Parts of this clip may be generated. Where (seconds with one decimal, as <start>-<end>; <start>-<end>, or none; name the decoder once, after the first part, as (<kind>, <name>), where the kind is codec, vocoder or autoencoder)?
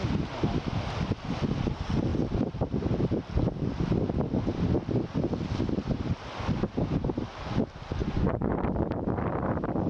8.0-8.5 (vocoder, Vocos)